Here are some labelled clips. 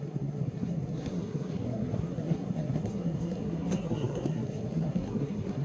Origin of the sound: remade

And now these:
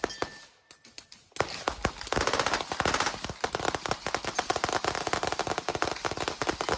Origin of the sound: recorded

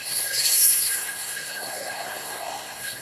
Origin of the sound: remade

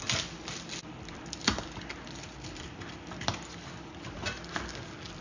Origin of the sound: recorded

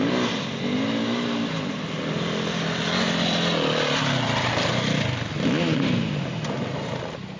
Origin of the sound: recorded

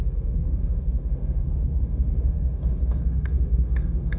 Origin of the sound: remade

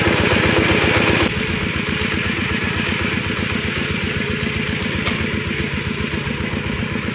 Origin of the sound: recorded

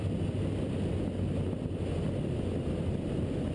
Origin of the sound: recorded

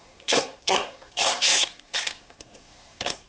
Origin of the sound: remade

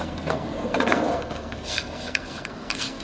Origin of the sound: remade